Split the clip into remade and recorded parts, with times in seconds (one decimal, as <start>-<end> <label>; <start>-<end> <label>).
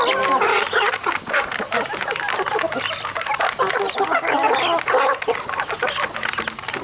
0.0-0.5 recorded; 0.5-1.1 remade; 1.1-6.8 recorded